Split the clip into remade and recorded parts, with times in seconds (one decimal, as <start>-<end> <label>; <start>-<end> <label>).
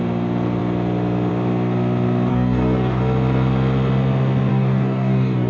0.0-2.3 recorded; 2.3-3.0 remade; 3.0-4.5 recorded; 4.5-5.5 remade